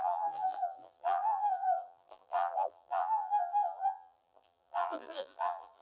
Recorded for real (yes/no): no